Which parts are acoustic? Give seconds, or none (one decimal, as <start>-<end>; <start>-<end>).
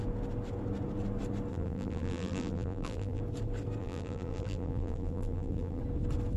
0.0-1.5; 3.2-3.8; 5.8-6.4